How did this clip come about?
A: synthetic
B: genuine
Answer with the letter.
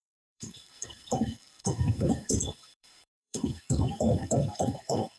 A